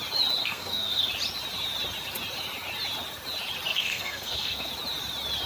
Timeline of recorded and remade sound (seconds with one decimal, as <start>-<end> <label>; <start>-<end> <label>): 0.0-0.4 recorded; 0.4-1.1 remade; 1.1-3.7 recorded; 3.7-4.7 remade; 4.7-5.5 recorded